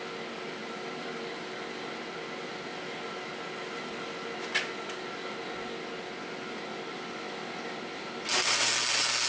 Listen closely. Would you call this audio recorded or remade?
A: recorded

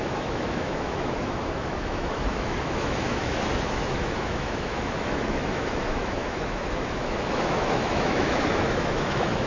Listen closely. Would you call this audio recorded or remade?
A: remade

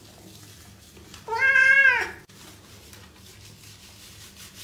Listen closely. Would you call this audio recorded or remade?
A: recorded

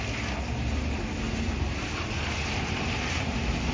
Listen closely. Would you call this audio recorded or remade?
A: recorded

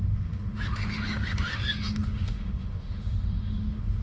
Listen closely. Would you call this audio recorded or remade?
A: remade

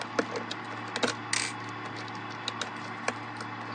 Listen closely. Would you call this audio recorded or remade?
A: recorded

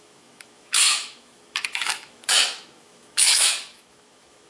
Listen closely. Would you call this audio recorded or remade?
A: remade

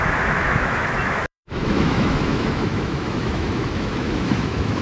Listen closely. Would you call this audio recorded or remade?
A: remade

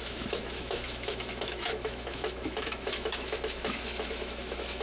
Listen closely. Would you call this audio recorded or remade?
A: remade